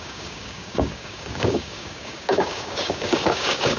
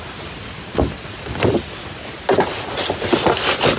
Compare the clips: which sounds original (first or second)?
second